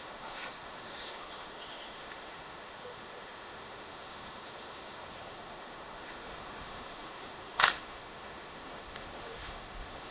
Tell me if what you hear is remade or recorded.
remade